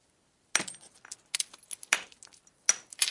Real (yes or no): yes